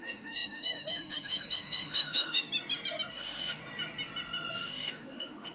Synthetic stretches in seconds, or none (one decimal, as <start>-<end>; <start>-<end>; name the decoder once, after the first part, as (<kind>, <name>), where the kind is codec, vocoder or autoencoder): 0.0-2.5 (autoencoder, DAC-VAE); 3.1-3.6; 4.5-5.5